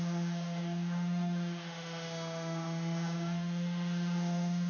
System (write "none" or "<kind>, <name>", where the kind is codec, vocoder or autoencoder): autoencoder, DAC-VAE